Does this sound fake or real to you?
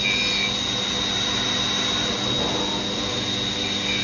real